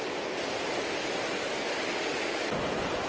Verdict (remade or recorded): recorded